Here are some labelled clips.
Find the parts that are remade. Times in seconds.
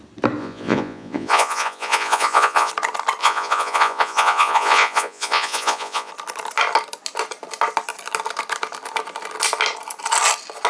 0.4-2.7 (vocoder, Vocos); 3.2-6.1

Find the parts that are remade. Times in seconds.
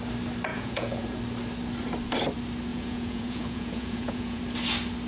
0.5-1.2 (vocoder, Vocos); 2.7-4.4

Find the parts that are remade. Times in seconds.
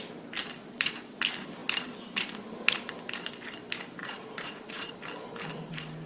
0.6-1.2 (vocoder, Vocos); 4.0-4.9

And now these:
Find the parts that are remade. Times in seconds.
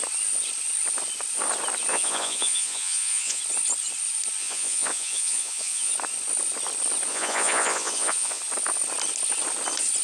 1.9-3.4 (vocoder, Vocos); 4.4-5.9; 7.1-8.4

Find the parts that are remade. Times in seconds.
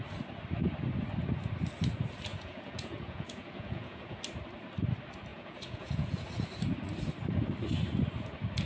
2.3-4.2 (vocoder, Vocos); 5.3-6.3